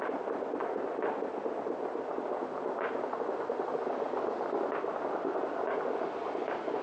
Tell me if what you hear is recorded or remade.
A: recorded